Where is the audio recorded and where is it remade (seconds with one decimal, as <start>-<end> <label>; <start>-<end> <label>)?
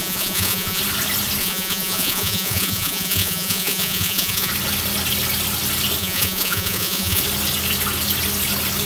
0.0-0.8 remade; 0.8-1.4 recorded; 1.4-4.5 remade; 4.5-6.0 recorded; 6.0-7.2 remade; 7.2-8.9 recorded